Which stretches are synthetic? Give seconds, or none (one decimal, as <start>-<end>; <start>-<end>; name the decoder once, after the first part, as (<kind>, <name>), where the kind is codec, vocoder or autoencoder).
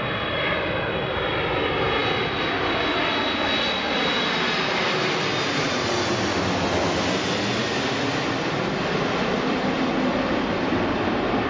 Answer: none